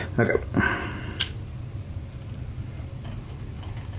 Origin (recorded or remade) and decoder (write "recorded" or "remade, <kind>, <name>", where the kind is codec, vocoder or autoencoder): recorded